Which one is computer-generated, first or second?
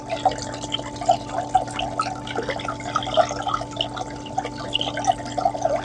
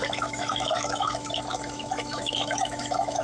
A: second